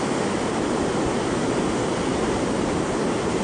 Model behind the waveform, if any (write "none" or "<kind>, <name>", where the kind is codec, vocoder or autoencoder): none